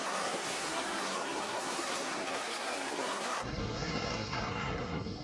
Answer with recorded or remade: remade